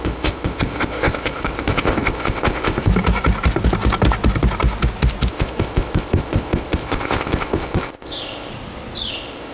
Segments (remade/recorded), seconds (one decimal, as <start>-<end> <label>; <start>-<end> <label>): 0.0-2.9 remade; 2.9-5.3 recorded; 5.3-8.5 remade; 8.5-9.1 recorded; 9.1-9.5 remade